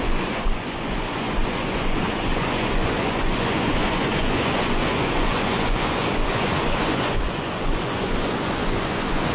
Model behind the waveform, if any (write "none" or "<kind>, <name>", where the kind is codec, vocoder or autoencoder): vocoder, Vocos